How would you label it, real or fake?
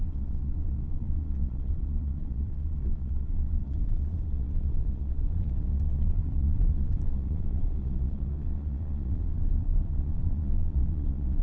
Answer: fake